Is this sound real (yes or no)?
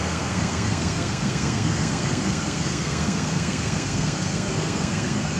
no